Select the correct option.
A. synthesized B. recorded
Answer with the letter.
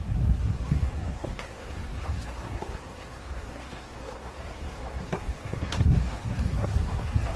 A